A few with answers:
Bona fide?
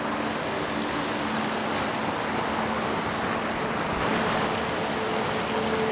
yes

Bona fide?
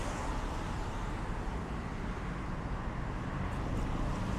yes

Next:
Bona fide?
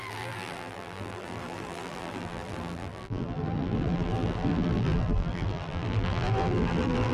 no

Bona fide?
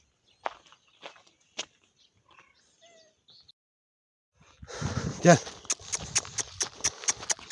yes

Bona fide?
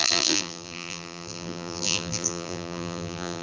no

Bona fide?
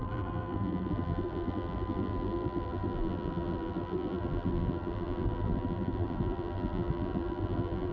no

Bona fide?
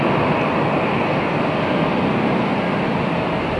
yes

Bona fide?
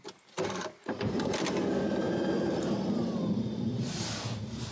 no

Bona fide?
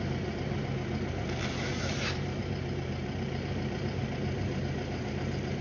no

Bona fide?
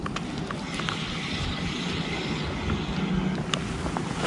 yes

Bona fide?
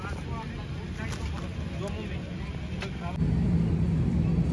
yes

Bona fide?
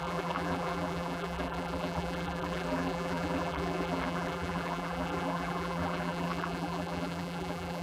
no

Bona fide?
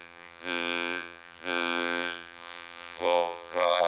no